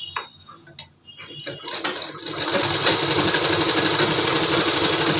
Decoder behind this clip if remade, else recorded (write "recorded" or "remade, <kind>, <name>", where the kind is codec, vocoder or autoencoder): recorded